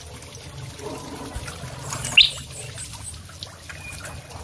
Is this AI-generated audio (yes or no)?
no